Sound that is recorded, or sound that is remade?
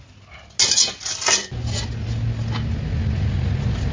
recorded